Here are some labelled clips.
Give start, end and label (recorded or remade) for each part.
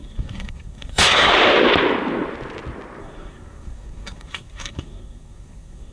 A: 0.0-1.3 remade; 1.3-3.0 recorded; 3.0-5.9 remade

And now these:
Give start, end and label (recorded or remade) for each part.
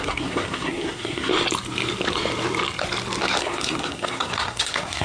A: 0.0-1.3 remade; 1.3-3.4 recorded; 3.4-5.0 remade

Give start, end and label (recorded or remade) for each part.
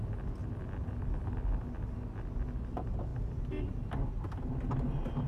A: 0.0-5.3 recorded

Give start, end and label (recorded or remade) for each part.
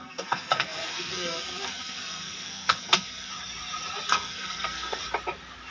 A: 0.0-3.3 remade; 3.3-4.1 recorded; 4.1-5.0 remade; 5.0-5.7 recorded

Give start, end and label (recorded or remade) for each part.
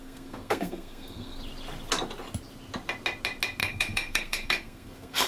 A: 0.0-1.4 remade; 1.4-3.6 recorded; 3.6-5.3 remade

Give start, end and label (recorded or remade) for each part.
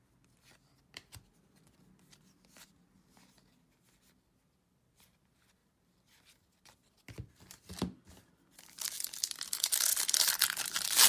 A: 0.0-11.1 recorded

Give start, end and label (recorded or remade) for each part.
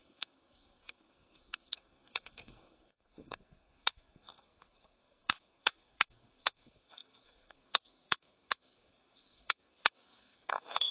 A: 0.0-10.9 remade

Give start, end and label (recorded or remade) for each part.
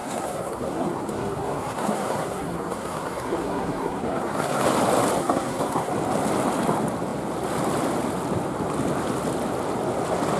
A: 0.0-4.6 remade; 4.6-5.2 recorded; 5.2-5.9 remade; 5.9-10.4 recorded